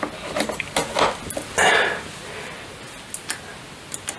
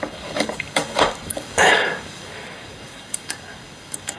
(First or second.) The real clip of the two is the first